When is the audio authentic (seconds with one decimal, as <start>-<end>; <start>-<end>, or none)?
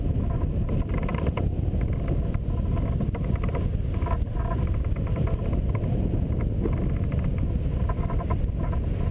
0.0-9.1